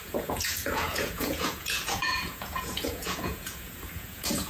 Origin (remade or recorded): remade